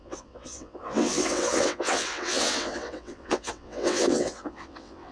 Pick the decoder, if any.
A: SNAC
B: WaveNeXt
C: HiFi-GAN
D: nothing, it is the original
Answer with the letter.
B